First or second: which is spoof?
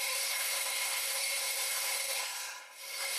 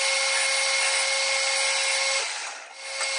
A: first